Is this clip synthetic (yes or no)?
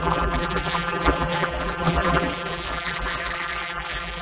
yes